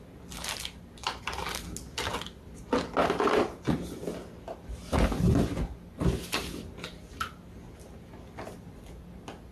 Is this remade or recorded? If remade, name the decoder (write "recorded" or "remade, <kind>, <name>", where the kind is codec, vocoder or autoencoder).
recorded